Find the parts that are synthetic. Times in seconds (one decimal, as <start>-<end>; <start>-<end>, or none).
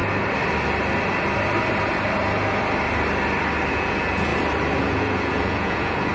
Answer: 3.7-4.3; 4.8-6.1